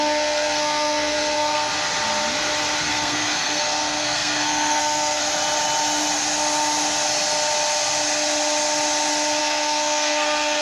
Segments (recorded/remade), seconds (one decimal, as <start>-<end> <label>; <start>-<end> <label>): 0.0-1.7 remade; 1.7-2.8 recorded; 2.8-5.2 remade; 5.2-9.4 recorded; 9.4-10.6 remade